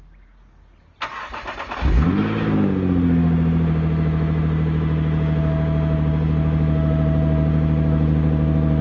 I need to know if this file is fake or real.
real